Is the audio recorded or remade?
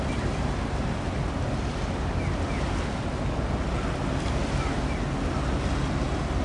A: recorded